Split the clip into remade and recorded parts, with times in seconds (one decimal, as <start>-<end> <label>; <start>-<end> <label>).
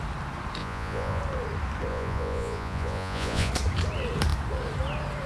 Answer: 0.0-0.6 recorded; 0.6-1.2 remade; 1.2-1.9 recorded; 1.9-3.5 remade; 3.5-5.3 recorded